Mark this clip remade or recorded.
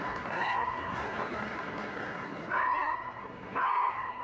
remade